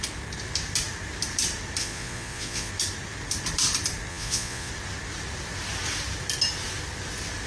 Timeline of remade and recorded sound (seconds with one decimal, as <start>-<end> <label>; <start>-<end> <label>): 0.0-1.8 recorded; 1.8-2.7 remade; 2.7-4.1 recorded; 4.1-4.7 remade; 4.7-7.5 recorded